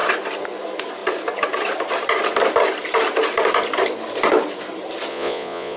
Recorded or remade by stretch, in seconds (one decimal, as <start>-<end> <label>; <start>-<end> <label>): 0.0-5.1 recorded; 5.1-5.8 remade